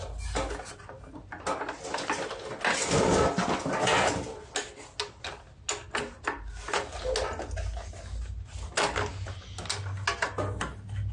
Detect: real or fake real